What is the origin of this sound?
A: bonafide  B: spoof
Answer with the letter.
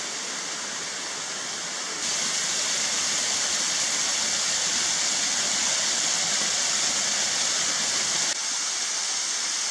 A